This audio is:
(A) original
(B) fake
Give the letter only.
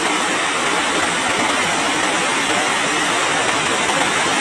A